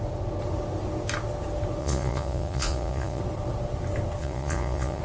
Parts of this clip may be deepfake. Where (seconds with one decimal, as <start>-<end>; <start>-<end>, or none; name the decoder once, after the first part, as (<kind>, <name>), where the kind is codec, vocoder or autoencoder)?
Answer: 1.8-3.2 (vocoder, Vocos); 4.2-5.0